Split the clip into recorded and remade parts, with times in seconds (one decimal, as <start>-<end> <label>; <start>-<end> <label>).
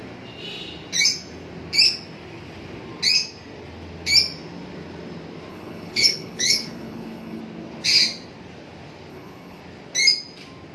0.0-5.5 recorded; 5.5-7.4 remade; 7.4-9.1 recorded; 9.1-9.6 remade; 9.6-10.7 recorded